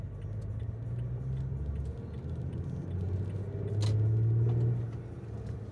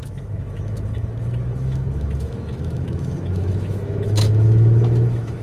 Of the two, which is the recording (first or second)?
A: first